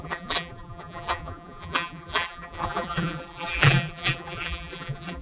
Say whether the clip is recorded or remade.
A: remade